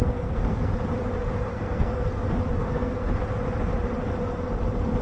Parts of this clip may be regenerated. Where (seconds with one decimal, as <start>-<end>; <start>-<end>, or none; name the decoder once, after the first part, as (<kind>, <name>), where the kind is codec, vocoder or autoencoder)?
0.0-0.7 (codec, SNAC); 1.5-2.2; 2.6-3.1